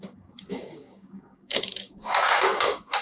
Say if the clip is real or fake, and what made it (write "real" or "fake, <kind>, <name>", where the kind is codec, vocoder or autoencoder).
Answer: fake, codec, DAC